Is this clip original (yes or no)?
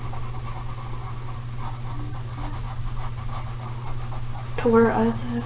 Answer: yes